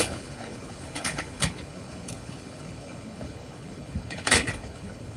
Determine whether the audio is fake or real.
fake